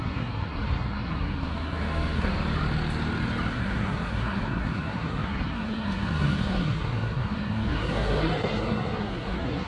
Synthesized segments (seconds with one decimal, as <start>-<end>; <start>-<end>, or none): 0.0-2.3; 3.5-9.7